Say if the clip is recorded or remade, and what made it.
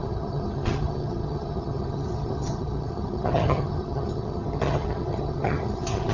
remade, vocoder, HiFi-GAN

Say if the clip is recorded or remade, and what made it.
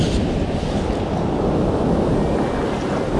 recorded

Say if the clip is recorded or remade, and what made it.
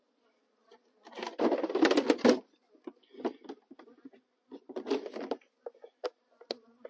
recorded